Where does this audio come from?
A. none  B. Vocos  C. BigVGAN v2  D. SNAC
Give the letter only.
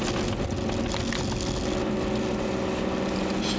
A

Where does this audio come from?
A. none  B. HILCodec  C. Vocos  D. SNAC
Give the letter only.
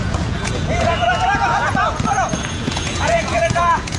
C